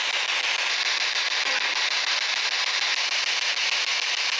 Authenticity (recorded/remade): recorded